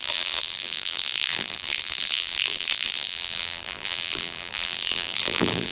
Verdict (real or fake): fake